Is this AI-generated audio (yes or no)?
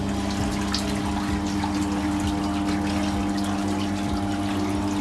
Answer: no